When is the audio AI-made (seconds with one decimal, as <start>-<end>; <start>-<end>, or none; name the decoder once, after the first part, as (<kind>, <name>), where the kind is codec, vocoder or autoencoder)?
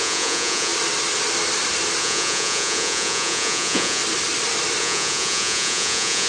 0.0-0.7 (vocoder, Vocos); 2.0-4.0; 4.8-6.3